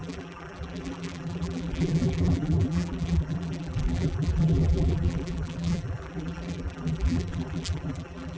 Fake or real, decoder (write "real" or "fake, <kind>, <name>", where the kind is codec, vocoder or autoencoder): fake, vocoder, BigVGAN v2